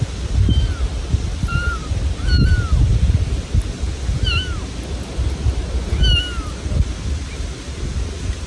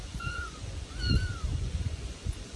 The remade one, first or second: second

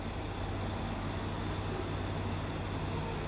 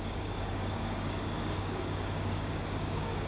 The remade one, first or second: second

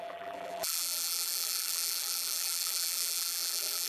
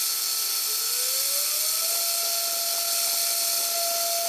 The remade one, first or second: first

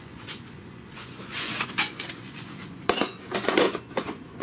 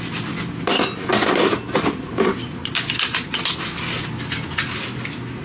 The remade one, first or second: first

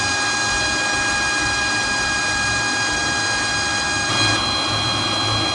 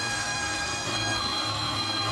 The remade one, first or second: second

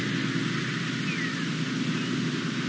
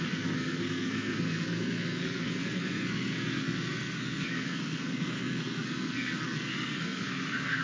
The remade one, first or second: second